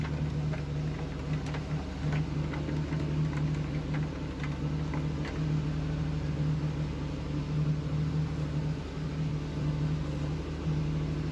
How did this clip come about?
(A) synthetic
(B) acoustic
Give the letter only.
B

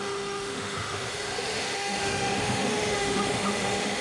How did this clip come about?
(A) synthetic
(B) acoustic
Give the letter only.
A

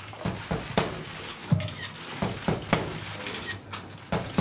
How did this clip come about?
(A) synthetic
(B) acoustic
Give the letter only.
B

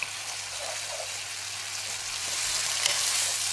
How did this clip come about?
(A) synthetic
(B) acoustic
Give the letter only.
B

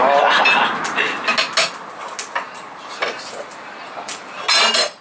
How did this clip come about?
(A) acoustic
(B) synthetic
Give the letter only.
A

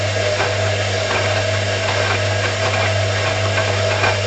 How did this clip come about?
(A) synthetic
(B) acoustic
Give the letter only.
B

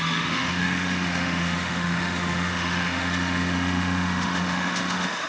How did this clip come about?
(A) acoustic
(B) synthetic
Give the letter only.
B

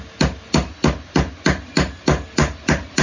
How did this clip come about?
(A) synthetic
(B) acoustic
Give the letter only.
B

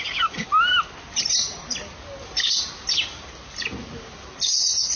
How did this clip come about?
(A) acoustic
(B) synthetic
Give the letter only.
A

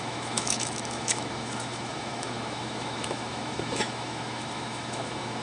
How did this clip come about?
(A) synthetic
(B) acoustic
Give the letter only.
A